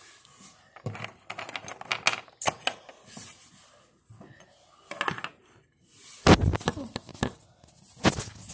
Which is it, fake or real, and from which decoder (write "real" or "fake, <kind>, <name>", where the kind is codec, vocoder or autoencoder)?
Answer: real